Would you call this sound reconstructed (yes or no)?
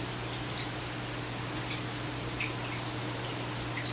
no